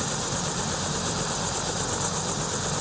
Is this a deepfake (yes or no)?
yes